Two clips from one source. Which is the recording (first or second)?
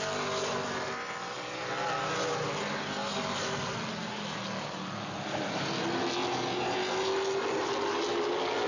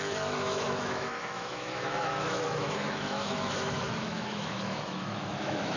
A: first